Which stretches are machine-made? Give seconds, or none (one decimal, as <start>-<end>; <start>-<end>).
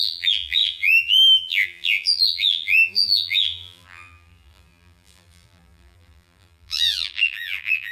0.0-7.9